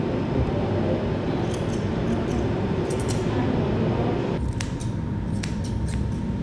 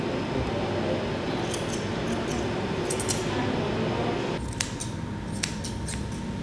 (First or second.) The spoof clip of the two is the first